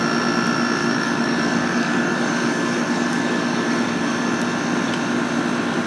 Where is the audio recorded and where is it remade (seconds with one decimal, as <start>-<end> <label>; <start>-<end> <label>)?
0.0-0.8 recorded; 0.8-4.3 remade; 4.3-5.9 recorded